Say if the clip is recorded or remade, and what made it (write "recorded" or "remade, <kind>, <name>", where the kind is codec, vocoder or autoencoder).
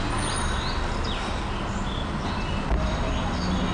recorded